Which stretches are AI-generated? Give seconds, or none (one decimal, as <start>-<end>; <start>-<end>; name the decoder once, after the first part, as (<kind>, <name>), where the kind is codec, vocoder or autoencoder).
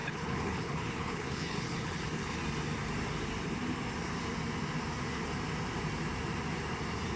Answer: 0.0-2.4 (codec, HILCodec)